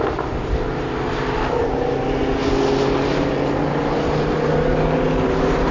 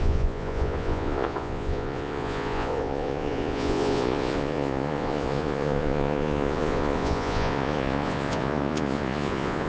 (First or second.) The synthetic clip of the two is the second